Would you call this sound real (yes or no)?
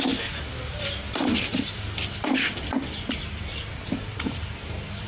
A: yes